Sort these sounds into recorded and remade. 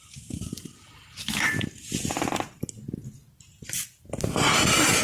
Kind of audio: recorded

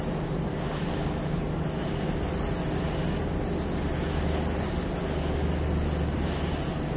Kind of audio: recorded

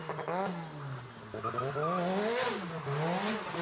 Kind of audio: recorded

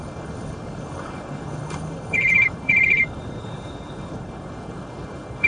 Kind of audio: remade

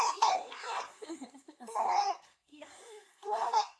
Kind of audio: remade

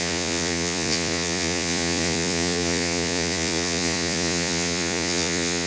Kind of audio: remade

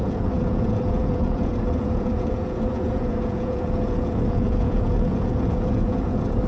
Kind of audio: remade